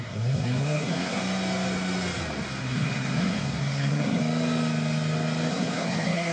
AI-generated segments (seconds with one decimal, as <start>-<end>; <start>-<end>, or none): 0.0-1.2; 2.6-4.2; 5.5-6.3